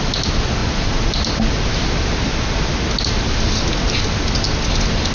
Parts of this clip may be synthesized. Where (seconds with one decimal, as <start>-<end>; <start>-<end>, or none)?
none

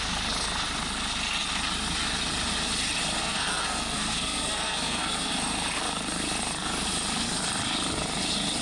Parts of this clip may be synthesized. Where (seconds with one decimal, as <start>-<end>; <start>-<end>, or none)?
3.2-5.3

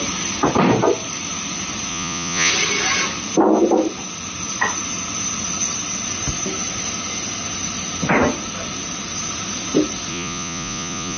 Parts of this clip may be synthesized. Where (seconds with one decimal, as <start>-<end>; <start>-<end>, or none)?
1.9-2.5; 10.1-11.2